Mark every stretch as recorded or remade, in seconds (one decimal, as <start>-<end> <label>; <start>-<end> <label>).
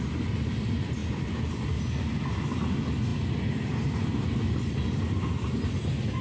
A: 0.0-6.2 recorded